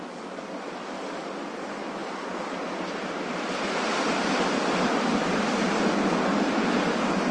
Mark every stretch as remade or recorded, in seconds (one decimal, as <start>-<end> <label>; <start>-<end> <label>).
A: 0.0-7.3 recorded